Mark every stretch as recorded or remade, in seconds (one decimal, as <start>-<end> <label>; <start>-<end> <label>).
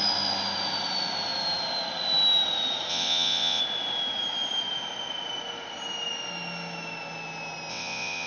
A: 0.0-2.9 recorded; 2.9-3.6 remade; 3.6-7.7 recorded; 7.7-8.3 remade